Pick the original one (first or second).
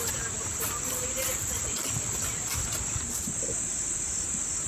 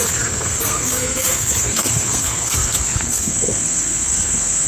first